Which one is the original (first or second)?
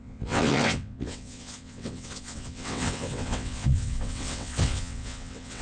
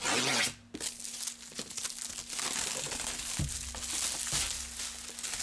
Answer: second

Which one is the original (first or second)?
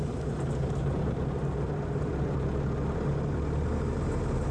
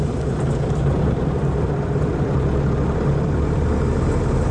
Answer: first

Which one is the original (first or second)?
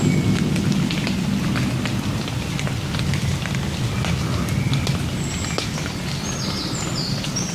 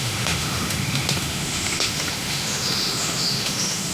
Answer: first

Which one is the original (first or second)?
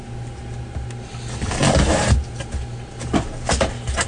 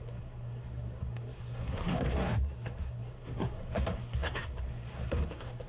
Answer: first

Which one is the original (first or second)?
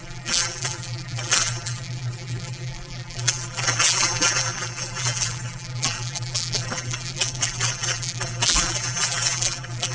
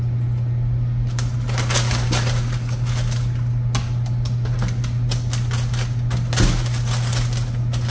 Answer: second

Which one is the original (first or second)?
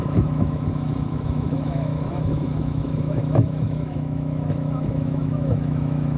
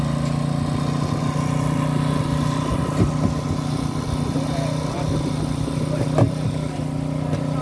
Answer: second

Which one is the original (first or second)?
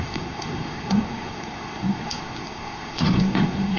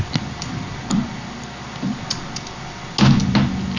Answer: second